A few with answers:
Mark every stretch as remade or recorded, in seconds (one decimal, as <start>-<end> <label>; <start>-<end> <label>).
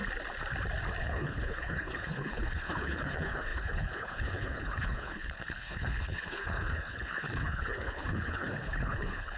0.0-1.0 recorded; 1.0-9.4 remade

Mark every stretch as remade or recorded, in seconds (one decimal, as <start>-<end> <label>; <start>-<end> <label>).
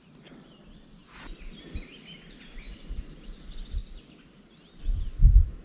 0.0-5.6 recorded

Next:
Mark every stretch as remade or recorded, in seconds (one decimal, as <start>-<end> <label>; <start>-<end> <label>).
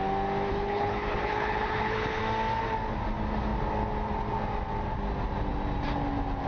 0.0-0.5 recorded; 0.5-2.2 remade; 2.2-6.5 recorded